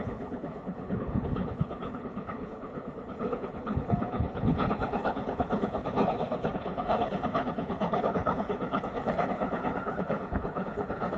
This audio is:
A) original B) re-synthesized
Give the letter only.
B